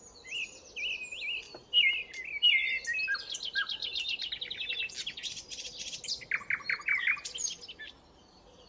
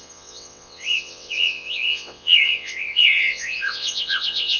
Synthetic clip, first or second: second